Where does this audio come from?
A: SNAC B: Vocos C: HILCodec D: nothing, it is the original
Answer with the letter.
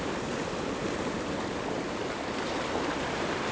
D